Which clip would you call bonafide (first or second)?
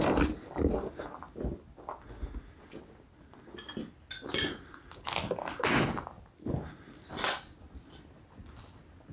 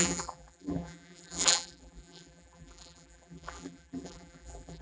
first